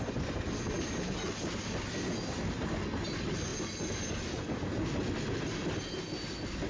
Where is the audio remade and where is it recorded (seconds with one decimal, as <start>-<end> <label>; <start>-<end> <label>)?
0.0-6.7 recorded